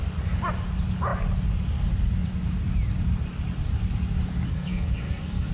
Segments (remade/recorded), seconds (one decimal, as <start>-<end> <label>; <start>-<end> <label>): 0.0-4.5 recorded; 4.5-5.5 remade